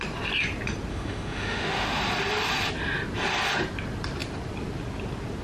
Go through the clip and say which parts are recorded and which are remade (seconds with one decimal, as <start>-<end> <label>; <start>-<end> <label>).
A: 0.0-0.9 recorded; 0.9-2.0 remade; 2.0-5.4 recorded